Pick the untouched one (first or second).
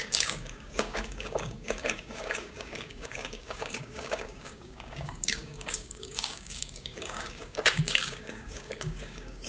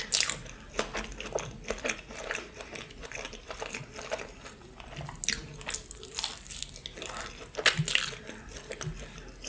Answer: second